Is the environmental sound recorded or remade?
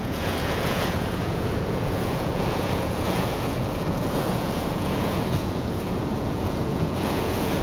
remade